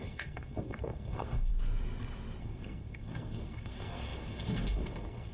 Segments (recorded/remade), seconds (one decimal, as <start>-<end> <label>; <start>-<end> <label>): 0.0-1.5 remade; 1.5-2.4 recorded; 2.4-5.3 remade